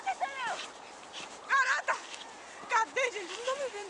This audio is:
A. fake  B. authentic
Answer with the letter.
A